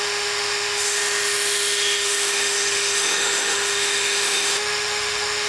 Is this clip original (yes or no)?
no